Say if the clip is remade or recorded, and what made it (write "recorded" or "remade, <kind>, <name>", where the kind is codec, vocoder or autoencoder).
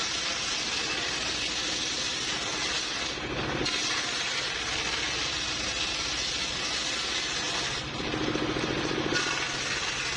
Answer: recorded